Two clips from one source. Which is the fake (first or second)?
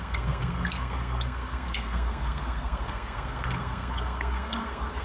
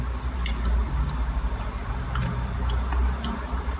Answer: first